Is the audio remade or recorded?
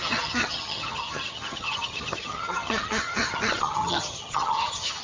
remade